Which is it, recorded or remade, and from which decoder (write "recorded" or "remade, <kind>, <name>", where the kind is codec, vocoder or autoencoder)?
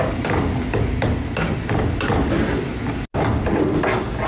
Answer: recorded